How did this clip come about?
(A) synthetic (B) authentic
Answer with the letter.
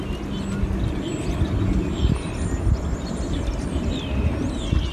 B